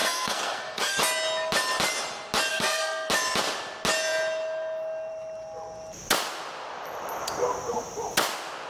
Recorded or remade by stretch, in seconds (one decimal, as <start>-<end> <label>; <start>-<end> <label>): 0.0-1.0 remade; 1.0-2.5 recorded; 2.5-3.1 remade; 3.1-8.7 recorded